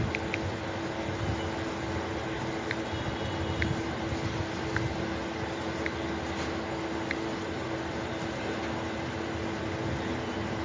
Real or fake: real